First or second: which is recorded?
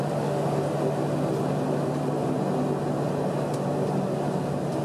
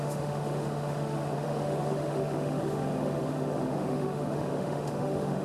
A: first